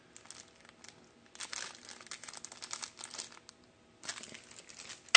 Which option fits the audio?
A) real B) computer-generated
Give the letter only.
A